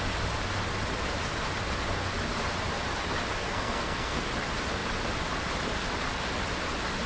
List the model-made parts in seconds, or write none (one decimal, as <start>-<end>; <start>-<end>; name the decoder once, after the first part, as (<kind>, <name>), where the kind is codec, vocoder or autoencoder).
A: 3.4-4.3 (codec, SNAC)